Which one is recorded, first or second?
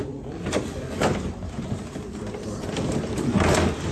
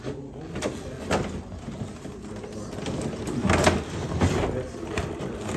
second